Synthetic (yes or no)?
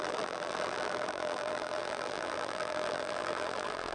yes